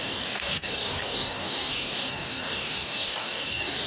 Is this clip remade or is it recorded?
remade